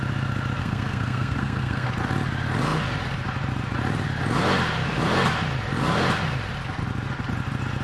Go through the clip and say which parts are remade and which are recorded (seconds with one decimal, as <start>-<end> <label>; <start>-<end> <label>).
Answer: 0.0-0.6 recorded; 0.6-1.9 remade; 1.9-7.8 recorded